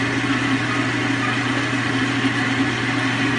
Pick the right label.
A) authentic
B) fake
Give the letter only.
A